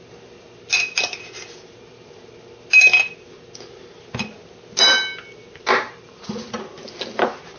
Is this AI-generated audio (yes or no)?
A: no